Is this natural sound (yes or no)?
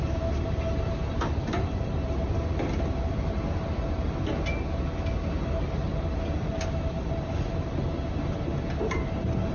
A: yes